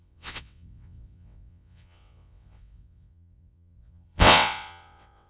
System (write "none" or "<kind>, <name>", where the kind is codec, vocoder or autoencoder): vocoder, WaveNeXt